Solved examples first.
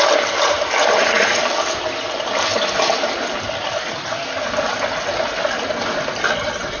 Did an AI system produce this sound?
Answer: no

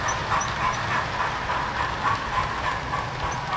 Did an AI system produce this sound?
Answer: no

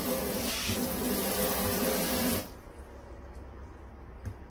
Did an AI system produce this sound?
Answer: no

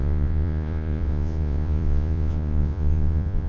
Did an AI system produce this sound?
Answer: yes